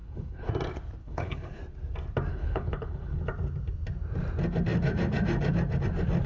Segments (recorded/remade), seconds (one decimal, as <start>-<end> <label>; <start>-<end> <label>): 0.0-0.5 remade; 0.5-1.0 recorded; 1.0-1.6 remade; 1.6-2.3 recorded; 2.3-3.2 remade; 3.2-6.3 recorded